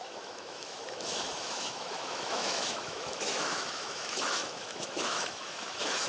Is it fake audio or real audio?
fake